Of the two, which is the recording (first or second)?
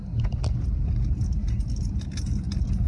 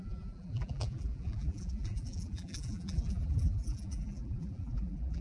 first